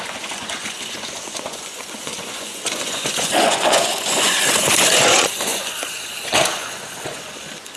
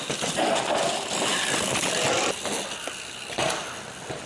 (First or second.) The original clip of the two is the second